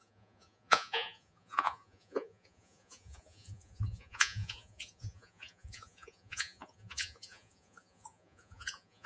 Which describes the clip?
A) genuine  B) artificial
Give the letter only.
B